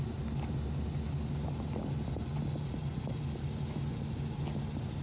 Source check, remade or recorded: recorded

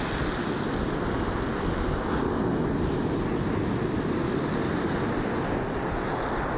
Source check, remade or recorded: recorded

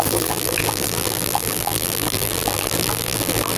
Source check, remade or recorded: remade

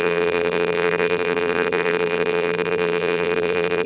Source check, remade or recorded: remade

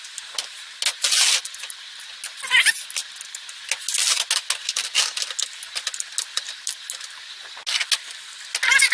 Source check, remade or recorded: recorded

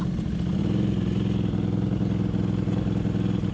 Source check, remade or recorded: recorded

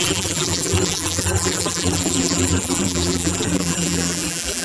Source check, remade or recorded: remade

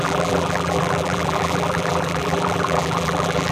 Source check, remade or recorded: remade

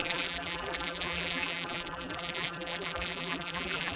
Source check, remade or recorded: remade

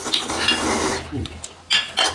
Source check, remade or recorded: recorded